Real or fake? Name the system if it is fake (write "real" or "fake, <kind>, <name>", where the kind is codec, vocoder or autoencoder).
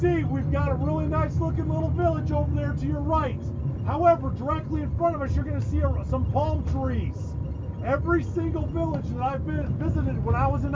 real